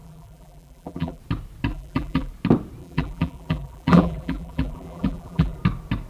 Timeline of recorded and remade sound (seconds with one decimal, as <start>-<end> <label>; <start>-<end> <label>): 0.0-1.2 remade; 1.2-1.7 recorded; 1.7-2.3 remade; 2.3-2.8 recorded; 2.8-5.6 remade; 5.6-6.1 recorded